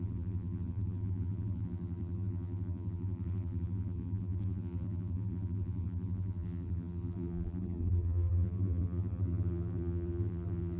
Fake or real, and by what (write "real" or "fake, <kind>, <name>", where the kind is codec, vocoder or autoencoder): fake, vocoder, BigVGAN v2